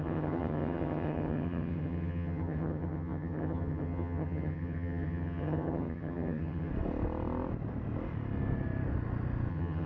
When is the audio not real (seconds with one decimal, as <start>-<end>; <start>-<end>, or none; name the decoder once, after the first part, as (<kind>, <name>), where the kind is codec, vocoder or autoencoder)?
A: 0.0-6.7 (vocoder, HiFi-GAN); 9.5-9.9